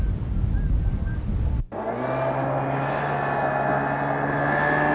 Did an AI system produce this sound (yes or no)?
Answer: no